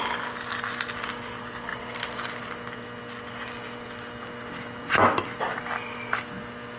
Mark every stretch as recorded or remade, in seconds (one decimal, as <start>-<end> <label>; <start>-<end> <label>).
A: 0.0-6.8 recorded